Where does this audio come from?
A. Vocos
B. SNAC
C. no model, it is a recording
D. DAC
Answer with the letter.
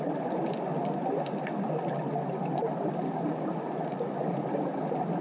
C